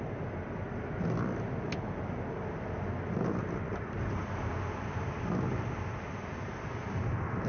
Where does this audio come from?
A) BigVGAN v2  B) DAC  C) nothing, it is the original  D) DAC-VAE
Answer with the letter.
C